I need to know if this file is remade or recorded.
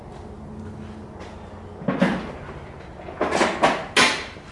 recorded